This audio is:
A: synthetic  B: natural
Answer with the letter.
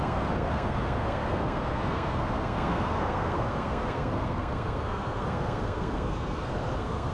A